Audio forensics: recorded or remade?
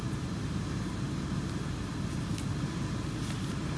recorded